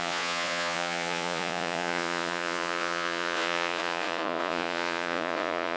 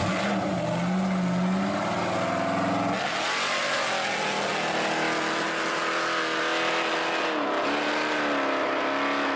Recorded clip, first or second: second